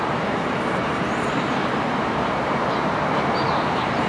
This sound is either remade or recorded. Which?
remade